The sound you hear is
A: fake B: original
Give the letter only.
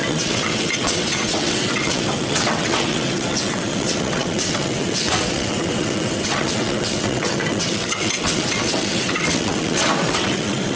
A